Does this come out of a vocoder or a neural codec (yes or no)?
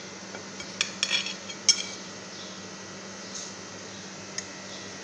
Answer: no